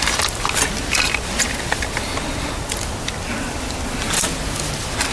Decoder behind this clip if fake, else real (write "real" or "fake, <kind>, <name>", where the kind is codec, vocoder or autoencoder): real